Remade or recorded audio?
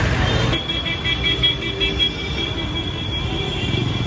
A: recorded